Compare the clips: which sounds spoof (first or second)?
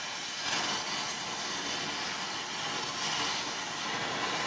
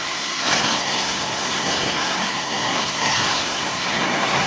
second